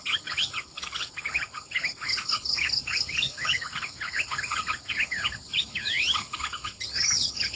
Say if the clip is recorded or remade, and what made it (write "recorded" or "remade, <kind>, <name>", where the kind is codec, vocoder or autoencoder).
remade, codec, HILCodec